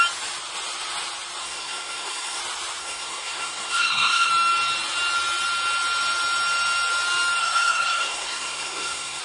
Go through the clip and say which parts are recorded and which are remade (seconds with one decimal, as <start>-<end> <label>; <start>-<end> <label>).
0.0-1.4 recorded; 1.4-2.4 remade; 2.4-2.8 recorded; 2.8-4.3 remade; 4.3-7.4 recorded; 7.4-9.2 remade